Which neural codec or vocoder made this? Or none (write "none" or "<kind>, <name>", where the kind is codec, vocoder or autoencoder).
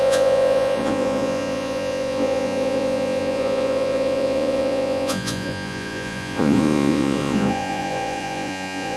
vocoder, Vocos